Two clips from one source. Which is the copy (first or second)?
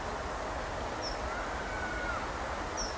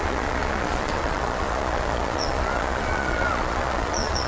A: second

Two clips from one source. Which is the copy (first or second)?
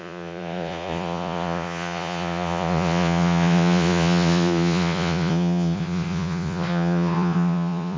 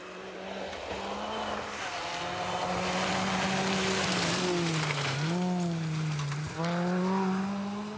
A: first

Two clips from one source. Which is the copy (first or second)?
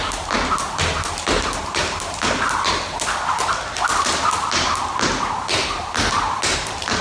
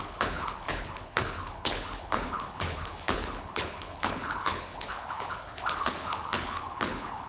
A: second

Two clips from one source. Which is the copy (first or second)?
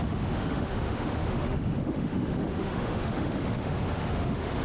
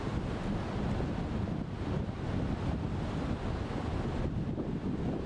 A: first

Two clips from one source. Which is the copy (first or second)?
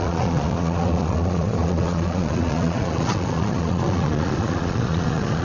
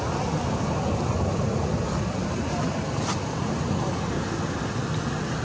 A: first